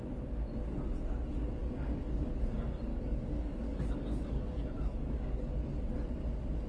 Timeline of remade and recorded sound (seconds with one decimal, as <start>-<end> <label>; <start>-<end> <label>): 0.0-1.6 recorded; 1.6-2.4 remade; 2.4-2.9 recorded; 2.9-5.5 remade; 5.5-6.7 recorded